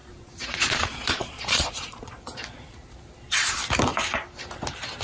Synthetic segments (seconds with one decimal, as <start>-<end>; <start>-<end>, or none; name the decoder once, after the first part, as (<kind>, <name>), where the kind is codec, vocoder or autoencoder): 0.0-2.2 (vocoder, Vocos)